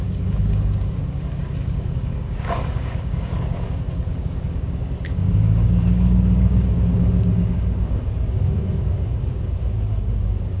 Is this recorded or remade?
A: remade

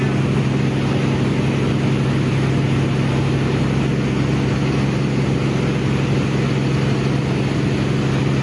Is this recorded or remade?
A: recorded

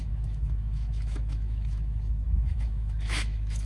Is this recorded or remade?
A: remade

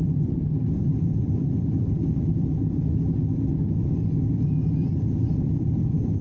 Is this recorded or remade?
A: remade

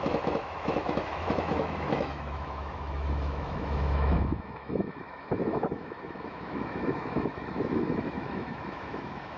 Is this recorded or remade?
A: remade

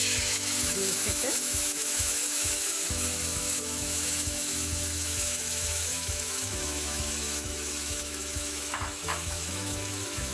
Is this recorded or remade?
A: remade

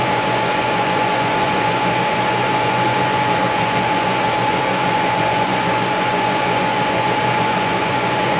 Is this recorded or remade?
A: remade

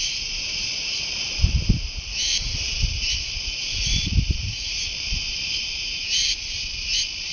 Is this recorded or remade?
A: remade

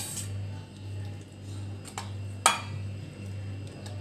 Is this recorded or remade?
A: recorded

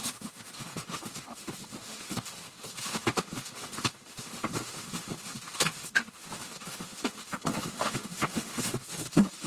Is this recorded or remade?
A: remade